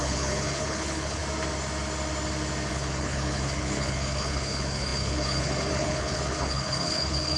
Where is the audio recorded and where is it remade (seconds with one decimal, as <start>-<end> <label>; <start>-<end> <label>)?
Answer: 0.0-1.2 remade; 1.2-2.7 recorded; 2.7-7.4 remade